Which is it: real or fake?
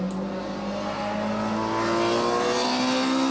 real